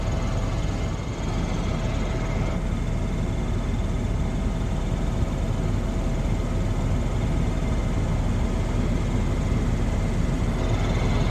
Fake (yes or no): no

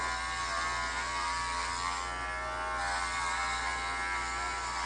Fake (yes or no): no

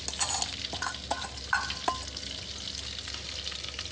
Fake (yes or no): no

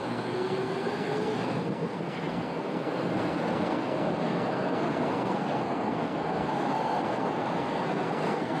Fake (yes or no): yes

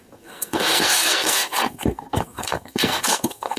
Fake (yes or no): yes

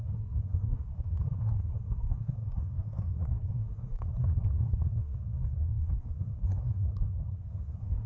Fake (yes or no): yes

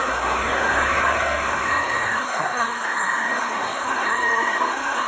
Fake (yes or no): yes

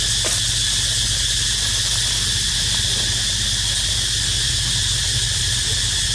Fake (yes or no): no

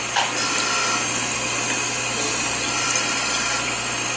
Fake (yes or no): no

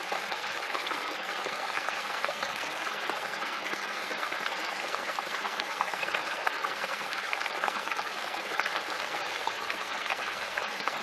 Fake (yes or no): yes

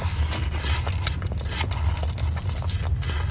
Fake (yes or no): no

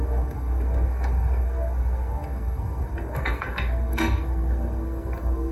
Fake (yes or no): yes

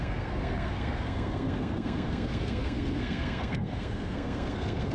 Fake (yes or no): yes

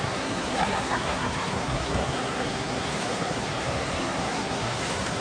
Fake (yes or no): yes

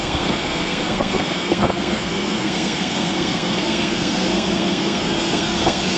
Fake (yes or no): yes